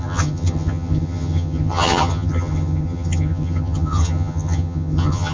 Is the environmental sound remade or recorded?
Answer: remade